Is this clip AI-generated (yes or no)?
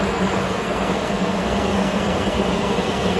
yes